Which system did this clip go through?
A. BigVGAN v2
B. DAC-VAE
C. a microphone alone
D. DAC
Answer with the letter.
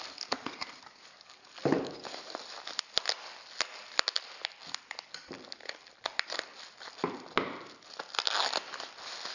C